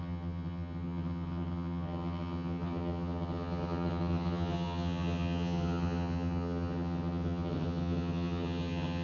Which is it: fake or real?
fake